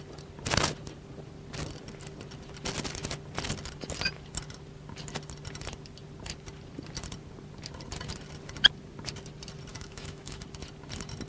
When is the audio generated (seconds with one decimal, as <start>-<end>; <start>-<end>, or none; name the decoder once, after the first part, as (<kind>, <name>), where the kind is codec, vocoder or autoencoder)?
9.7-10.4 (autoencoder, DAC-VAE)